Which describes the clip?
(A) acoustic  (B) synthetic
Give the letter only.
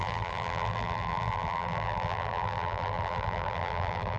B